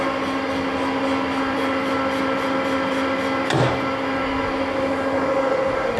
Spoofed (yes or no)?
no